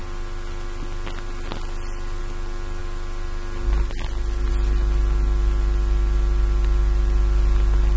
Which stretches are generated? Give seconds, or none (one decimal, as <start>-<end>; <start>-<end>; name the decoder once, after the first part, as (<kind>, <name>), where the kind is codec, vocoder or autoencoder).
none

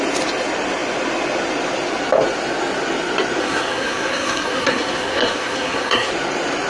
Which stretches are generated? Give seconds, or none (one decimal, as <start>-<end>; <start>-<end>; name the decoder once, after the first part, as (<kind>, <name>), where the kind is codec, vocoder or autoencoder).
3.4-6.1 (codec, SNAC)

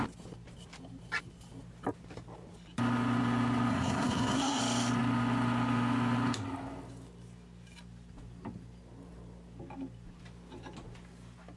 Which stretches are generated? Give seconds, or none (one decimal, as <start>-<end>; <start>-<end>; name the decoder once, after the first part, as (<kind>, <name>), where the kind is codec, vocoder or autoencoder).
3.7-4.6 (codec, SNAC)

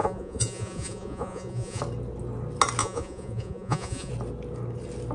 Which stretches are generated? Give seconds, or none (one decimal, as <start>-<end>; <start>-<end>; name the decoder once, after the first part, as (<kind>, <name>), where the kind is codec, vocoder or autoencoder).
0.0-1.8 (vocoder, Vocos); 2.8-4.1

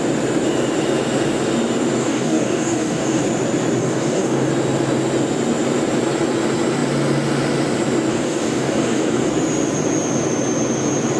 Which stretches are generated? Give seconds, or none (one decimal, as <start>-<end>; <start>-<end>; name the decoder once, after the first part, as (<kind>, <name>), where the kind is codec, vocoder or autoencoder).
2.0-3.2 (codec, DAC); 3.8-4.5; 8.1-9.3

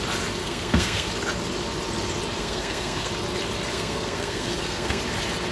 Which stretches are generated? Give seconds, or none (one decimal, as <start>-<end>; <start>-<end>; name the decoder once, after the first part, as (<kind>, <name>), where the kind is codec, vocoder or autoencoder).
0.4-1.1 (codec, SNAC); 2.4-3.1; 3.7-5.0

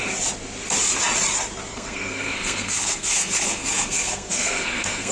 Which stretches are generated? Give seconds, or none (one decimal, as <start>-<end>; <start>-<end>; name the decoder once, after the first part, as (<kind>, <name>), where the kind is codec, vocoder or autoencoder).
1.7-5.1 (codec, SNAC)

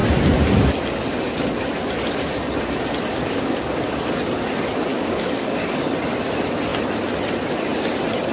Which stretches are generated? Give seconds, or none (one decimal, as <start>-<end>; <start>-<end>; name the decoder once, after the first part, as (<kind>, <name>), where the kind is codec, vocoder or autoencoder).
3.1-4.1 (codec, DAC); 4.9-5.8